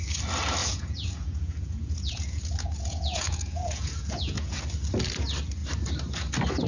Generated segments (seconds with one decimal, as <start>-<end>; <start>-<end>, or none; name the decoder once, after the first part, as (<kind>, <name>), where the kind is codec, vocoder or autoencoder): 0.6-4.6 (vocoder, Vocos)